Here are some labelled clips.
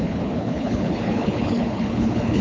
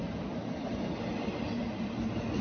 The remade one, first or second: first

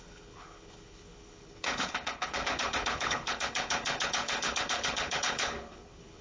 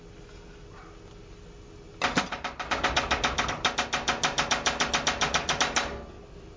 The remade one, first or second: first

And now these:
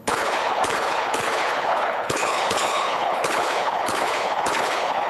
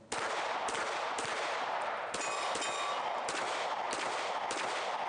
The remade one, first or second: first